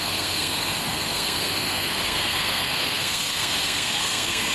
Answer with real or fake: fake